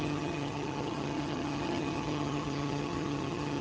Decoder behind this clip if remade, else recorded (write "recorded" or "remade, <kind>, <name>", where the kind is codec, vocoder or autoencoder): remade, vocoder, HiFi-GAN